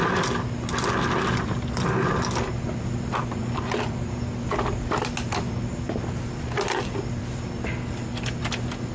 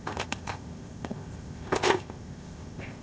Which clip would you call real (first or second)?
first